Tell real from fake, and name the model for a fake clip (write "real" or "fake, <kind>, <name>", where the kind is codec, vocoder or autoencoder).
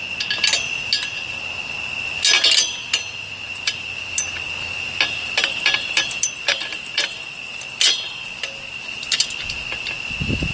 real